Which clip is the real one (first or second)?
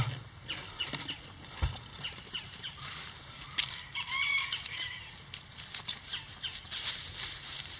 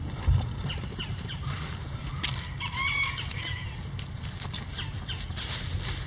second